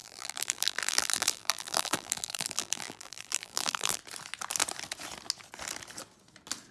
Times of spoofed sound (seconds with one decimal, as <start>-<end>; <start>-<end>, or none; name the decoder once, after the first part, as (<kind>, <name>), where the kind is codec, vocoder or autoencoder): 0.0-4.0 (vocoder, BigVGAN v2)